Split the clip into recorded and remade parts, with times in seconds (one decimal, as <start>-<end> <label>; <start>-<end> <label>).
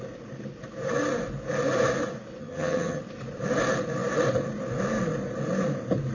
0.0-2.4 recorded; 2.4-3.0 remade; 3.0-6.1 recorded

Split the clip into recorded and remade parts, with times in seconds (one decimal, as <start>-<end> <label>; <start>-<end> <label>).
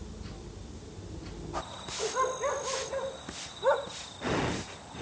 0.0-5.0 recorded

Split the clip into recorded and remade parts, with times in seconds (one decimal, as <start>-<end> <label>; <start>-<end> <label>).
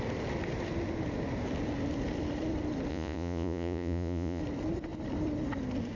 0.0-2.9 recorded; 2.9-4.4 remade; 4.4-6.0 recorded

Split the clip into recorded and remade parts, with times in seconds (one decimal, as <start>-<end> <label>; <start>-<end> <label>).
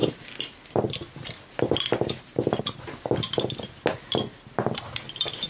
0.0-5.5 recorded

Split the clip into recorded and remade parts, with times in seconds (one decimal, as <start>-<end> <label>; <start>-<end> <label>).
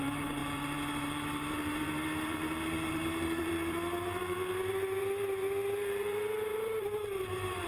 0.0-7.7 remade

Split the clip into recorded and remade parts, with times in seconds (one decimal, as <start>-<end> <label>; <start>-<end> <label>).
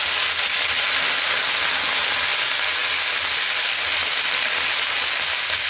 0.0-5.7 recorded